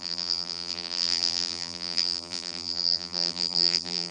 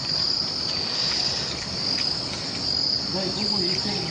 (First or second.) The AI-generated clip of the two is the first